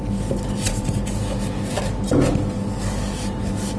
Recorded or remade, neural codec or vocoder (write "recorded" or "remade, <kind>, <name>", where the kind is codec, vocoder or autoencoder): recorded